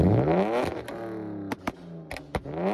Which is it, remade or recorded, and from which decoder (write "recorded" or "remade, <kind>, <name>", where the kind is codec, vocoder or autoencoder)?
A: recorded